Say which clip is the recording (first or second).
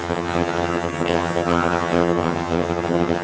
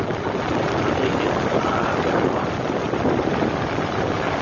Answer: second